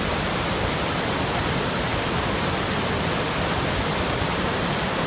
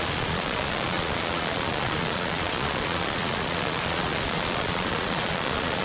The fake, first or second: second